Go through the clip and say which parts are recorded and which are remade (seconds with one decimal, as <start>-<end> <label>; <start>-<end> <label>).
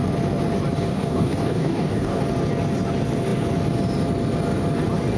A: 0.0-0.9 recorded; 0.9-2.2 remade; 2.2-5.2 recorded